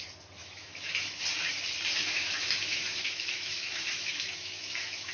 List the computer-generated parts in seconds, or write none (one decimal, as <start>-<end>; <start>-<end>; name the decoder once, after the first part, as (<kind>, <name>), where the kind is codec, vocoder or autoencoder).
0.4-1.2 (autoencoder, DAC-VAE); 1.9-5.1